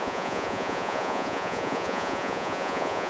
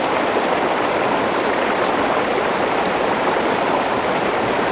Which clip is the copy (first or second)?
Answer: first